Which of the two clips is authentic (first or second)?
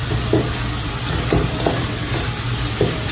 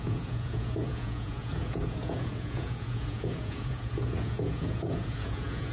first